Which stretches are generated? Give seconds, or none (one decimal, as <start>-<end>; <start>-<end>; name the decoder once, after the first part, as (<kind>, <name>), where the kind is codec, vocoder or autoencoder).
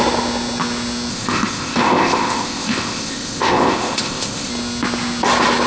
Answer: 1.1-4.5 (codec, ZipCodec)